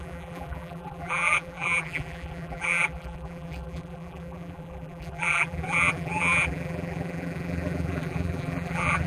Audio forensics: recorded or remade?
remade